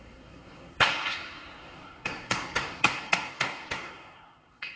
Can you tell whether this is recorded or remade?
remade